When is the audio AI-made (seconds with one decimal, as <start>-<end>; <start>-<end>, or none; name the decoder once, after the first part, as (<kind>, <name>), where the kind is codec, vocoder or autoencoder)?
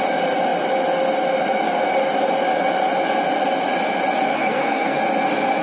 4.3-5.0 (codec, SNAC)